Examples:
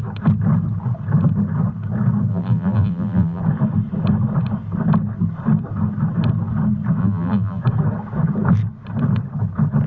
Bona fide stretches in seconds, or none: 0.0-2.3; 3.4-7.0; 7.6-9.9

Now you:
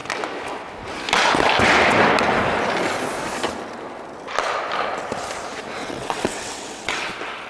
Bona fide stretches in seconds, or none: 0.0-5.8; 7.1-7.5

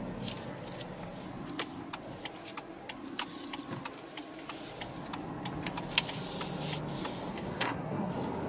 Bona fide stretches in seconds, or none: 0.0-7.3; 8.1-8.5

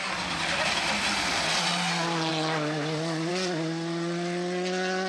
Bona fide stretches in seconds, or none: 0.0-5.1